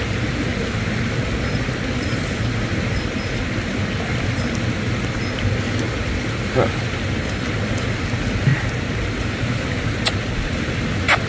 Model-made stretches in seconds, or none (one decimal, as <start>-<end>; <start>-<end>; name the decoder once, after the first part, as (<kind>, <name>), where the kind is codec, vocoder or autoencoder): none